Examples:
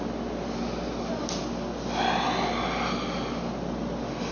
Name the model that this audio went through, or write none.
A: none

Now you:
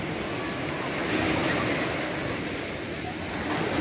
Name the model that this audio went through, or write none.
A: none